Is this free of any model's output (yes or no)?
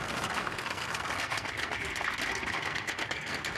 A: no